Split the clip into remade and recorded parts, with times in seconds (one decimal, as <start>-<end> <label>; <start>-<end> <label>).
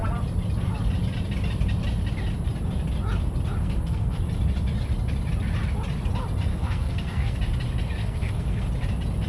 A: 0.0-3.6 recorded; 3.6-4.2 remade; 4.2-6.5 recorded; 6.5-7.4 remade; 7.4-8.0 recorded; 8.0-8.7 remade; 8.7-9.3 recorded